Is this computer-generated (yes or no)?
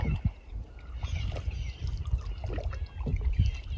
no